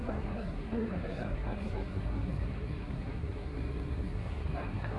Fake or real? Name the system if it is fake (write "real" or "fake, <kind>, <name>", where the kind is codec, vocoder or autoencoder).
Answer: fake, codec, SNAC